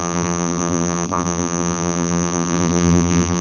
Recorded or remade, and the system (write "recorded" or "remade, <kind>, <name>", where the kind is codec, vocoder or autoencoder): remade, vocoder, BigVGAN v2